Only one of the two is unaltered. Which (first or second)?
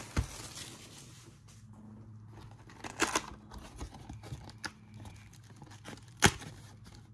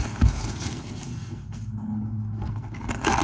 first